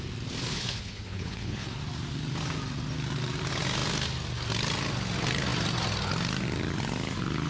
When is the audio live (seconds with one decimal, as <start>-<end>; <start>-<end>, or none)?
0.0-0.5; 1.8-7.5

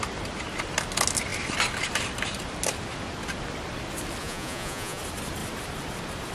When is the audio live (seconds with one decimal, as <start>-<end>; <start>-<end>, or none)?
0.0-4.2; 5.0-6.3

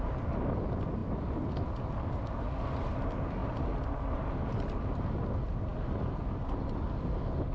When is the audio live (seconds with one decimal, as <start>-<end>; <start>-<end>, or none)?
0.0-7.5

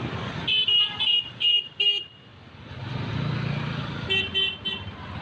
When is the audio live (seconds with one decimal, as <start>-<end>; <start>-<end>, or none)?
0.0-5.2

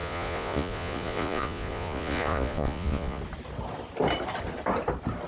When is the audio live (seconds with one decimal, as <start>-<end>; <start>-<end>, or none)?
3.2-5.3

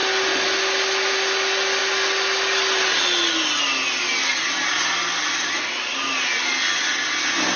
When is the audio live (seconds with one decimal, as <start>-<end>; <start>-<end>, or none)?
0.0-7.6